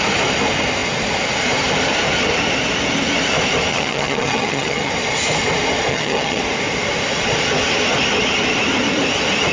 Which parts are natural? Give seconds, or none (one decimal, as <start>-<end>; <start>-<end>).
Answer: 0.0-3.7; 4.9-5.9; 6.4-9.5